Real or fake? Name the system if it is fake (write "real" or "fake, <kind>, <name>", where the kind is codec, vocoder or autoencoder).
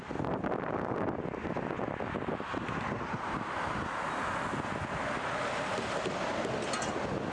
real